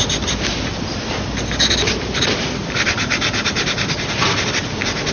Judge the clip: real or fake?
real